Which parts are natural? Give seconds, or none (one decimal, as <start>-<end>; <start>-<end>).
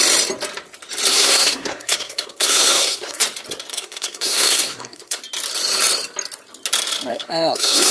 0.0-1.1; 3.2-3.7; 5.2-7.1